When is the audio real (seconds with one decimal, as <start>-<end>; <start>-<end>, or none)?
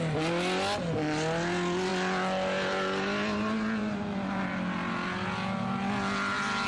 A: 0.0-6.7